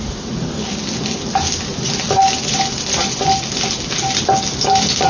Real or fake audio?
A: real